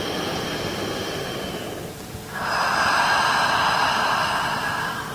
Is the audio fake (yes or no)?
no